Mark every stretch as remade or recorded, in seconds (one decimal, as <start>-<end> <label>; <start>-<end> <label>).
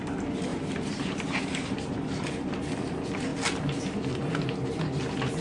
0.0-0.5 recorded; 0.5-2.3 remade; 2.3-5.4 recorded